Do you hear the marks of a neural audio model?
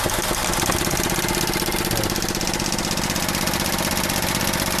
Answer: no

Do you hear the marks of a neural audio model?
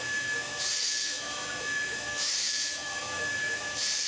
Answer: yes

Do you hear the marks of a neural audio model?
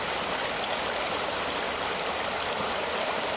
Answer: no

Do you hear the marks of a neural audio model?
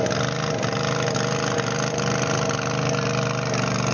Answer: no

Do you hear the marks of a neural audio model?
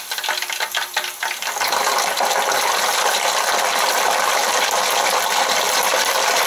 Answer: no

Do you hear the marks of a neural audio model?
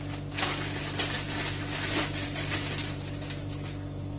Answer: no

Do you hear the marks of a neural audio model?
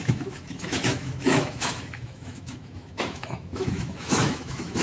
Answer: yes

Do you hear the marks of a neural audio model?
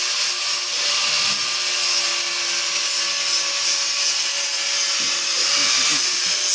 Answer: no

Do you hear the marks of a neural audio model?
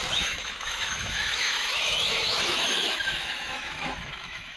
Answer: yes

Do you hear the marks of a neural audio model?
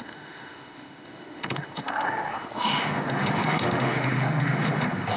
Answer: yes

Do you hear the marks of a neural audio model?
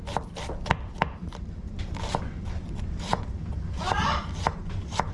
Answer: no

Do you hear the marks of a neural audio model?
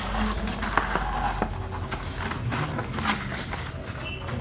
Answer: no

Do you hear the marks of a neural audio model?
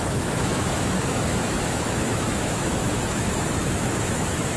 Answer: yes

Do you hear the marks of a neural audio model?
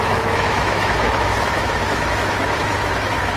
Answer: yes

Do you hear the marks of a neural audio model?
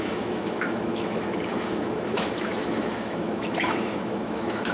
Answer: yes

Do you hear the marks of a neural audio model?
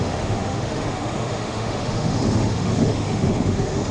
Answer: yes